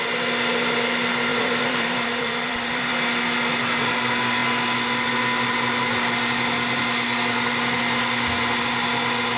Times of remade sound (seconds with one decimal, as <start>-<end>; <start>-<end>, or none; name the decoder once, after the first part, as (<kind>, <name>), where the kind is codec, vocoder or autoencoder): 1.3-2.9 (vocoder, BigVGAN v2)

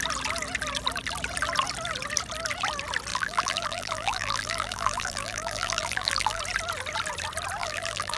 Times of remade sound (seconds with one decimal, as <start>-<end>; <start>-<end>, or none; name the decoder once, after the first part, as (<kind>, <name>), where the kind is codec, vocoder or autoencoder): 3.1-6.4 (vocoder, BigVGAN v2); 7.6-8.2

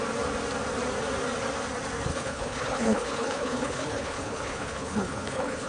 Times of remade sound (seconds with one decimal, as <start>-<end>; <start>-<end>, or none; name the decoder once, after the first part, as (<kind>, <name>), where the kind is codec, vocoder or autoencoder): 2.1-5.7 (codec, HILCodec)

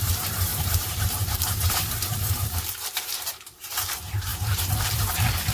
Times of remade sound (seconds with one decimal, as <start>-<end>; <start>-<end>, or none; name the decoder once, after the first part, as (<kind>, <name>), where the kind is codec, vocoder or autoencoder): 0.0-5.5 (vocoder, BigVGAN v2)

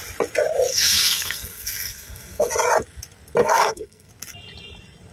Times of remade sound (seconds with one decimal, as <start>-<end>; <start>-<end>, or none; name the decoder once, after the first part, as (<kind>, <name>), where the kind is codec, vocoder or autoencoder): 0.7-2.5 (codec, SNAC); 3.4-4.1

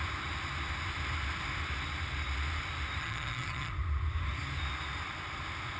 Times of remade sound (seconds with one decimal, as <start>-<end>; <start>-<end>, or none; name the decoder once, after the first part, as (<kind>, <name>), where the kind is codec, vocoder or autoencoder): 3.0-3.7 (vocoder, HiFi-GAN)

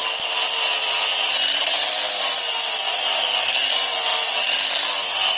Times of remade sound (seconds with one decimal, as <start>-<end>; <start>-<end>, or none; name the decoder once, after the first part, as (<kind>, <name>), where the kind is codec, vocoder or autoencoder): 0.0-3.2 (vocoder, BigVGAN v2)

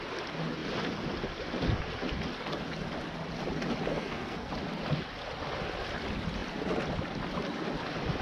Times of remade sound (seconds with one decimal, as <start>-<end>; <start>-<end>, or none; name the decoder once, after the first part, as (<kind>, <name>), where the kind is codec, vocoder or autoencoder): 3.9-4.5 (codec, SNAC)